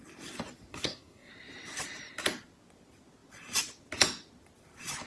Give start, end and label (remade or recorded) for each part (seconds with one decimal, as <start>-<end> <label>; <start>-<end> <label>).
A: 0.0-0.7 recorded; 0.7-1.3 remade; 1.3-5.1 recorded

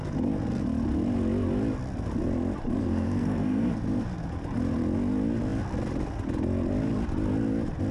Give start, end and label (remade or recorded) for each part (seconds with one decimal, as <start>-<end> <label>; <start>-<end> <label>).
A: 0.0-2.8 recorded; 2.8-3.8 remade; 3.8-7.9 recorded

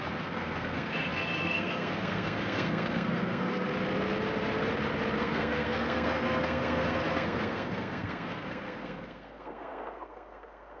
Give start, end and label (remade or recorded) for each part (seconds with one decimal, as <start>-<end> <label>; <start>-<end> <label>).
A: 0.0-3.7 remade; 3.7-5.2 recorded; 5.2-10.8 remade

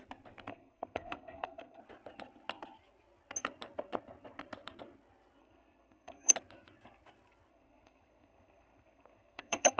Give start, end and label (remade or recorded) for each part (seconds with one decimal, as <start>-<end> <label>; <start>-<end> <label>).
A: 0.0-0.5 recorded; 0.5-1.8 remade; 1.8-5.4 recorded; 5.4-6.3 remade; 6.3-7.5 recorded; 7.5-9.8 remade